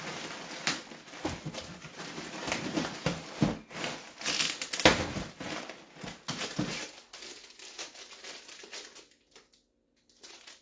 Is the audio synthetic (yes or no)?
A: no